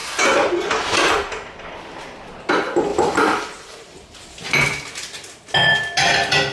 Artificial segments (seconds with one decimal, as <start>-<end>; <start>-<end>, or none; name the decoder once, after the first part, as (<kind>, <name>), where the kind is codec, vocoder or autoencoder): 2.9-4.2 (vocoder, BigVGAN v2)